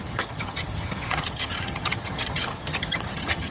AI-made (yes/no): yes